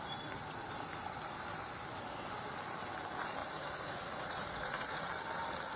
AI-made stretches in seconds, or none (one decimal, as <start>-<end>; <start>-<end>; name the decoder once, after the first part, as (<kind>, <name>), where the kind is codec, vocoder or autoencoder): 3.4-5.1 (vocoder, Vocos)